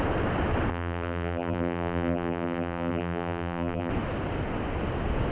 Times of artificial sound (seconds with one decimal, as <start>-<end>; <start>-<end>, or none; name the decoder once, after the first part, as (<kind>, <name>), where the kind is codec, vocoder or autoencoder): 0.7-3.9 (vocoder, BigVGAN v2)